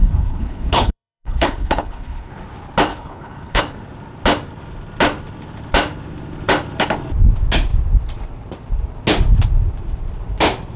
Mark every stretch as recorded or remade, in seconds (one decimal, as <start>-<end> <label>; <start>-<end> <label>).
0.0-2.3 remade; 2.3-2.9 recorded; 2.9-3.6 remade; 3.6-10.8 recorded